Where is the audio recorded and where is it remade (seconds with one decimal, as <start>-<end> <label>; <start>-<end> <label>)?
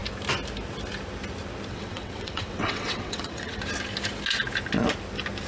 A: 0.0-1.7 recorded; 1.7-3.6 remade; 3.6-5.5 recorded